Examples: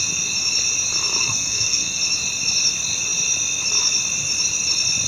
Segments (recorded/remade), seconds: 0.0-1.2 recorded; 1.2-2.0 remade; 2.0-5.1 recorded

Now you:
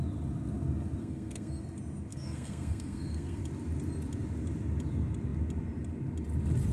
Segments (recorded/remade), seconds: 0.0-1.0 recorded; 1.0-1.6 remade; 1.6-2.1 recorded; 2.1-3.4 remade; 3.4-6.7 recorded

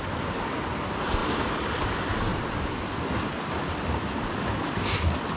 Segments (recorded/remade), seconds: 0.0-5.4 recorded

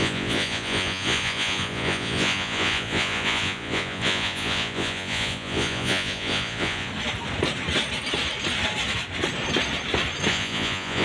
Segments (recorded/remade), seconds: 0.0-6.9 remade; 6.9-10.3 recorded; 10.3-11.0 remade

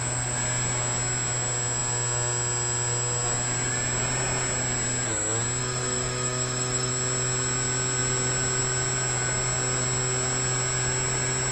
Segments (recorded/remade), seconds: 0.0-5.6 recorded; 5.6-6.9 remade; 6.9-11.5 recorded

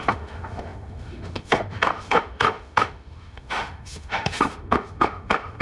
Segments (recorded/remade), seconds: 0.0-5.6 remade